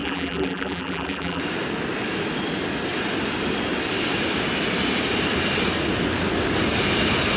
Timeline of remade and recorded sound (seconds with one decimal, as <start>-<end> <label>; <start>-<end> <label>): 0.0-1.4 remade; 1.4-7.4 recorded